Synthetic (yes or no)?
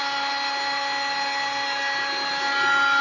no